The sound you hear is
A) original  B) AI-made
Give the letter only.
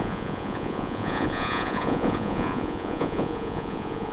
B